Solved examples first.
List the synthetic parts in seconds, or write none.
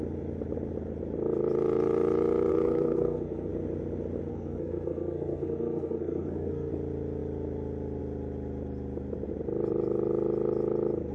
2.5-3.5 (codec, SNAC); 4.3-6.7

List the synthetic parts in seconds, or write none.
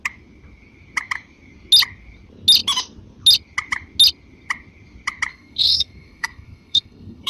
5.3-7.3 (codec, SNAC)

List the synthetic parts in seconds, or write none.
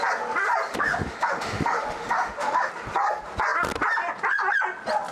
0.7-2.7 (autoencoder, DAC-VAE)